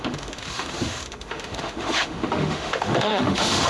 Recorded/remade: remade